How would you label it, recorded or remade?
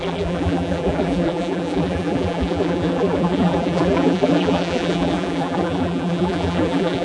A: remade